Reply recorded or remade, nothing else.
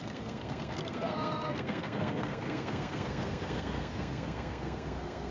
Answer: remade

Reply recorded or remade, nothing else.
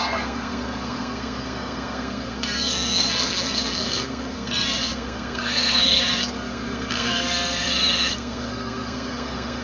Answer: remade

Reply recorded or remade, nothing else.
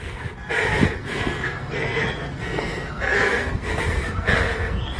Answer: remade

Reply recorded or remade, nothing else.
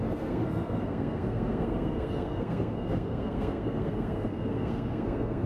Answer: remade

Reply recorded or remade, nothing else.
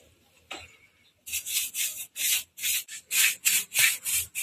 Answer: recorded